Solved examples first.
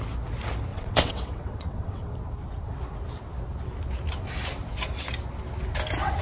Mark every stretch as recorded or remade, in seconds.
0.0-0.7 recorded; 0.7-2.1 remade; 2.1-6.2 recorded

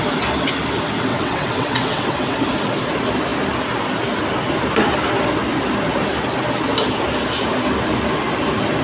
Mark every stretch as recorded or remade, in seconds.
0.0-1.1 recorded; 1.1-2.4 remade; 2.4-8.8 recorded

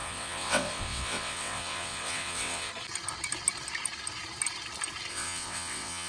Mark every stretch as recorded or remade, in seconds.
0.0-2.7 remade; 2.7-5.1 recorded; 5.1-6.1 remade